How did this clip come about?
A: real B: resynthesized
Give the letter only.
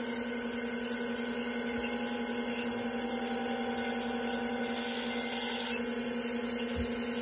A